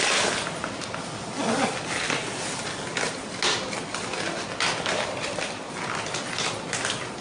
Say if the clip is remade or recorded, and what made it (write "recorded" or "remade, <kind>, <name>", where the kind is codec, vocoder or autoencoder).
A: recorded